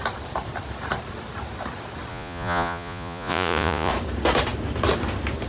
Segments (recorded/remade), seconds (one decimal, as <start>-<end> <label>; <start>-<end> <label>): 0.0-2.1 recorded; 2.1-3.9 remade; 3.9-5.5 recorded